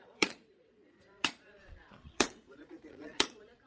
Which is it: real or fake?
fake